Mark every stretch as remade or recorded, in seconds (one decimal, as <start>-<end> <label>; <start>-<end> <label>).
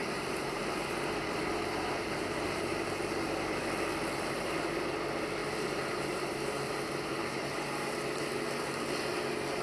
0.0-2.8 remade; 2.8-5.4 recorded; 5.4-8.2 remade; 8.2-9.6 recorded